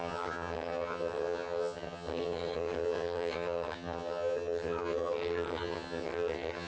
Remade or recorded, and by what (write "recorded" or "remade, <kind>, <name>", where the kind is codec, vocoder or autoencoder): remade, vocoder, HiFi-GAN